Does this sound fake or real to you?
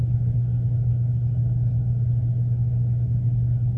fake